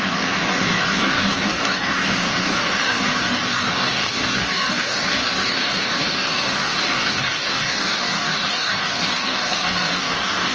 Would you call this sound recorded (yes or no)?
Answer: no